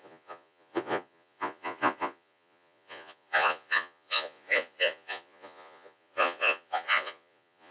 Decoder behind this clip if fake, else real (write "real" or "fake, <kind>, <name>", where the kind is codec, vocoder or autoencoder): fake, vocoder, Vocos